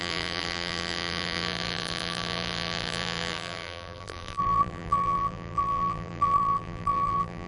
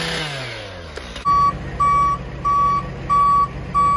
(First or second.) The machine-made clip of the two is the first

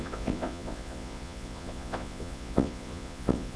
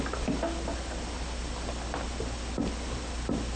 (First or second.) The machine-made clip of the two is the first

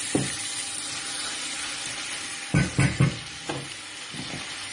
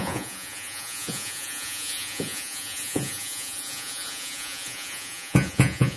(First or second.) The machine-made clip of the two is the second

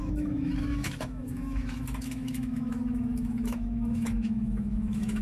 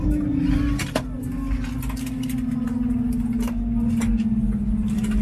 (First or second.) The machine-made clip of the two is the first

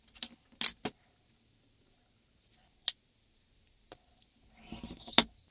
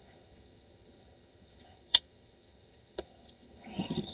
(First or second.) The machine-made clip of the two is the second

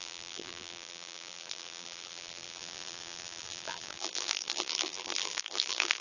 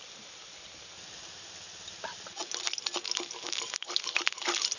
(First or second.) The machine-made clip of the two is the first